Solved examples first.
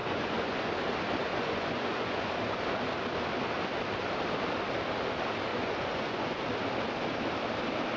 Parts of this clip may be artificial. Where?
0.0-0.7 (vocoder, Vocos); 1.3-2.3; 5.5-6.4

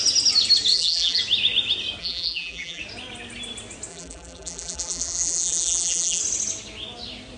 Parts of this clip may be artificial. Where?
0.7-1.2 (vocoder, BigVGAN v2); 2.0-2.8; 3.9-6.2

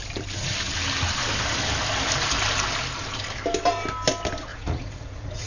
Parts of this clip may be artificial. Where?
4.5-5.5 (vocoder, Vocos)

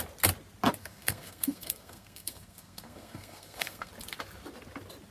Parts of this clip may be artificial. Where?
0.8-3.9 (codec, SNAC)

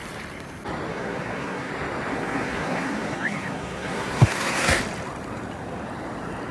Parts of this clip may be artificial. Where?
0.9-1.7 (codec, SNAC); 2.1-4.8